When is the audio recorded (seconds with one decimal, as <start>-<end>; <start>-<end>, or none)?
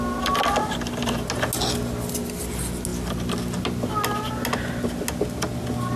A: 0.0-6.0